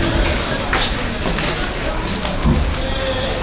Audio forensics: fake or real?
real